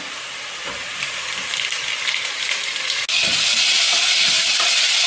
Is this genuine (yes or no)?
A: yes